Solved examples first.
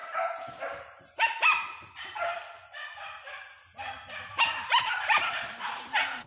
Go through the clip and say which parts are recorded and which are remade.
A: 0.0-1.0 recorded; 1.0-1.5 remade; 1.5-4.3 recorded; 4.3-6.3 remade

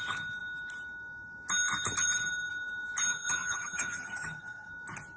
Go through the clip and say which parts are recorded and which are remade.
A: 0.0-3.1 recorded; 3.1-4.7 remade; 4.7-5.2 recorded